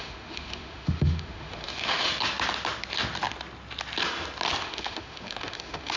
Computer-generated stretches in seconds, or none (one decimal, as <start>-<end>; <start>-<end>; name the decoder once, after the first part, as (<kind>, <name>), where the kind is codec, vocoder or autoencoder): 0.0-2.1 (autoencoder, DAC-VAE); 4.6-6.0